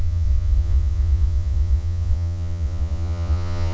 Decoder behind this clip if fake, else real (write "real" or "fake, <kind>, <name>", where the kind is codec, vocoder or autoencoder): fake, vocoder, Vocos